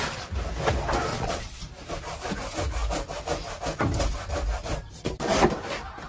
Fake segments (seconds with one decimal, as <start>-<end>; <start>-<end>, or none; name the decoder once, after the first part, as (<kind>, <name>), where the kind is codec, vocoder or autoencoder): 1.1-1.7 (vocoder, Vocos)